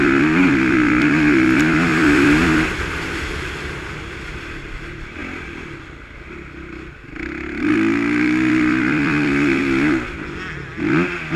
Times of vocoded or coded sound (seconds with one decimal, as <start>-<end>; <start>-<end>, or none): 0.0-5.2; 7.7-9.6

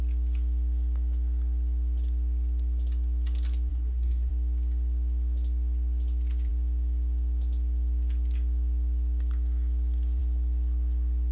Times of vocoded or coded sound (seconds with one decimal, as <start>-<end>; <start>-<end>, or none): 3.7-4.3

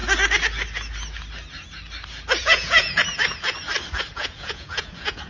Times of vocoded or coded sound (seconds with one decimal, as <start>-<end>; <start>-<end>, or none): 2.4-3.0; 4.1-5.3

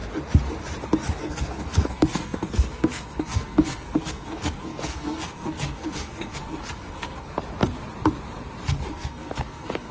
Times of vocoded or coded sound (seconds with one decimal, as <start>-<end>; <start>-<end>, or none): 1.2-7.4; 8.9-9.9

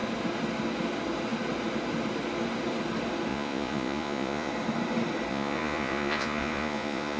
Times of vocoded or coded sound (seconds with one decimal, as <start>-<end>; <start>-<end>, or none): 3.3-4.5; 5.3-7.2

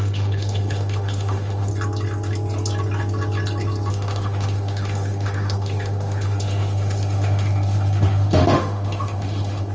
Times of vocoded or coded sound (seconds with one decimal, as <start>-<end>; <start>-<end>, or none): 0.0-1.7; 3.9-9.7

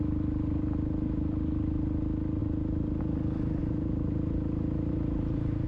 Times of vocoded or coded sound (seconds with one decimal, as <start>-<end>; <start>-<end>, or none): 2.4-3.0; 3.6-4.9